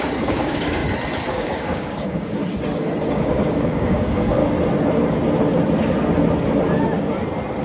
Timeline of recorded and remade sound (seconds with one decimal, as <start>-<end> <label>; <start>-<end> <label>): 0.0-0.8 remade; 0.8-1.3 recorded; 1.3-2.4 remade; 2.4-3.1 recorded; 3.1-4.4 remade; 4.4-7.6 recorded